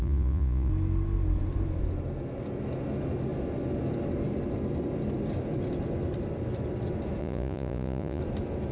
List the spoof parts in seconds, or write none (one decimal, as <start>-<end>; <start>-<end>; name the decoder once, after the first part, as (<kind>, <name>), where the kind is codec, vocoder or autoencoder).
0.0-0.7 (vocoder, Vocos); 7.2-8.2